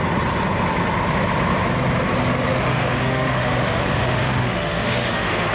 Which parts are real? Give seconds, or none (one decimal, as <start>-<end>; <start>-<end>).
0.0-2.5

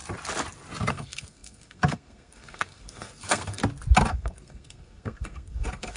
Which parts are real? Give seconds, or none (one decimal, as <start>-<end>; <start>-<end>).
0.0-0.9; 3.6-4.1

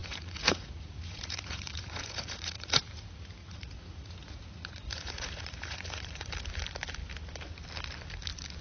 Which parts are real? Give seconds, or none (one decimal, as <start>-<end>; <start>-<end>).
2.8-3.4; 6.3-8.6